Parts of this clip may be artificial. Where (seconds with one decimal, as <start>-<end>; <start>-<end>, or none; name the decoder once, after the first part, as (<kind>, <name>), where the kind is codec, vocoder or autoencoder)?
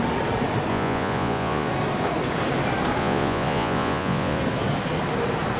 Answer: 0.7-1.7 (vocoder, Vocos); 3.0-4.4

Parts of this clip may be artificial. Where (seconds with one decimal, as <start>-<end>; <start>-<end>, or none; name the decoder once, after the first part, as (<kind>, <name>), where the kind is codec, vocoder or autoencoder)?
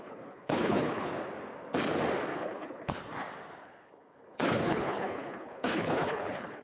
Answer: 0.0-1.1 (codec, HILCodec); 2.3-3.1; 3.6-6.6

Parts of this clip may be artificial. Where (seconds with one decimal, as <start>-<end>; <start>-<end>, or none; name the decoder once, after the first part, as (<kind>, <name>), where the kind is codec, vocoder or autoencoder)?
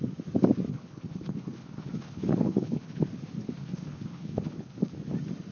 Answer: 0.7-3.1 (codec, HILCodec); 3.6-4.9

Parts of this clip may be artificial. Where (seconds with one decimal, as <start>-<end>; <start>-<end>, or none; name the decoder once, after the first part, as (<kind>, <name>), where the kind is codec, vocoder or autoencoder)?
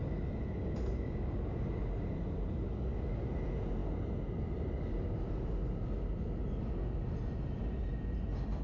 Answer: none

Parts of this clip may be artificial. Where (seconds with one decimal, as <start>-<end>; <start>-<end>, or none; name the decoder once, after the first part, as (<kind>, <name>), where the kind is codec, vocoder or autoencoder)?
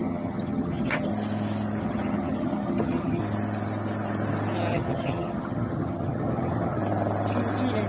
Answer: 0.0-1.1 (vocoder, HiFi-GAN); 1.8-3.2; 4.7-6.8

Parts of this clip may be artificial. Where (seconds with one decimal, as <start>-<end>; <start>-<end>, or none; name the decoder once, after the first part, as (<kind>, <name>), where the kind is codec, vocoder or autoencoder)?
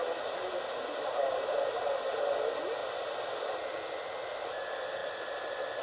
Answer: none